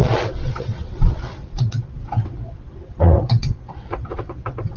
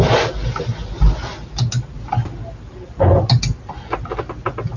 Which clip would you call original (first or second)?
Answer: second